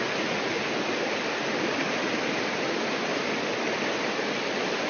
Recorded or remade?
recorded